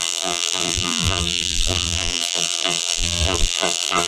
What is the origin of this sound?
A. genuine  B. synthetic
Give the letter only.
B